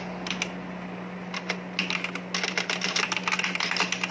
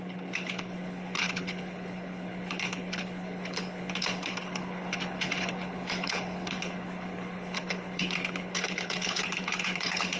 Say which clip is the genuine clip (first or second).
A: first